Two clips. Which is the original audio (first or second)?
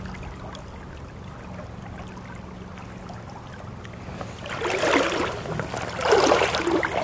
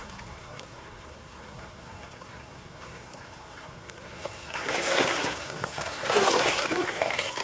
first